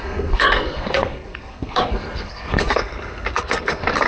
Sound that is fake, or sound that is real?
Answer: fake